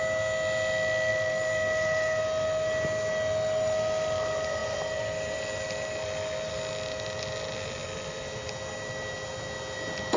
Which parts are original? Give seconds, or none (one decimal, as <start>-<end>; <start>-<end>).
0.0-1.1; 2.2-4.6; 6.5-10.2